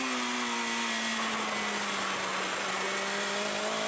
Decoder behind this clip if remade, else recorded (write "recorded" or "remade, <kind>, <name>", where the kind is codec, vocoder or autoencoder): recorded